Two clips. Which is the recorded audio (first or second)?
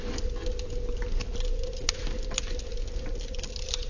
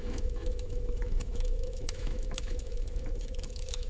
first